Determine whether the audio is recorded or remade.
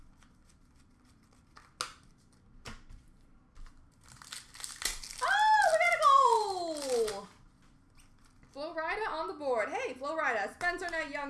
recorded